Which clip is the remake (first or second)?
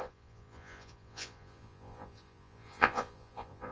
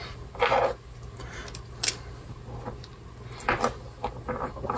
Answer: first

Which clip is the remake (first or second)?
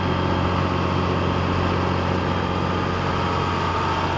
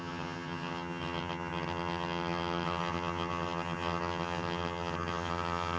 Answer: second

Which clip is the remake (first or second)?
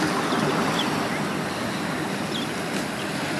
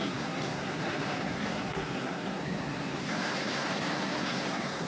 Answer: second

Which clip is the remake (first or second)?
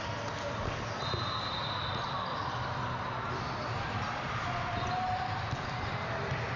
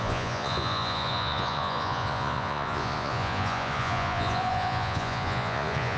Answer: second